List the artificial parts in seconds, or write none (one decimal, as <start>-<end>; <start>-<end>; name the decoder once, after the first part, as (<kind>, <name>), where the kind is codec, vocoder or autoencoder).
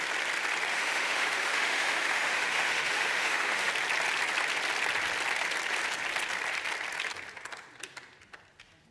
0.7-3.7 (autoencoder, DAC-VAE)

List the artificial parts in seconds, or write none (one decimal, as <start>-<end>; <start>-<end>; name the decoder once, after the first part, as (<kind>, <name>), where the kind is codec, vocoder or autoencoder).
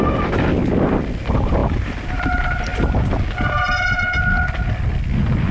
1.6-2.2 (vocoder, BigVGAN v2)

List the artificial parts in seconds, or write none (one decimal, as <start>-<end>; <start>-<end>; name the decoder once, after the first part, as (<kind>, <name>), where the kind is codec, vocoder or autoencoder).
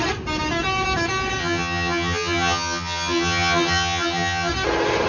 1.4-4.5 (vocoder, HiFi-GAN)